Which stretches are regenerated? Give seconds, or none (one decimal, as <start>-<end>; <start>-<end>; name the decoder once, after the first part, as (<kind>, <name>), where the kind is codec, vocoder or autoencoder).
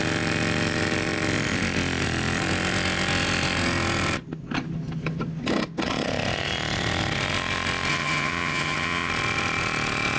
7.9-9.1 (vocoder, HiFi-GAN)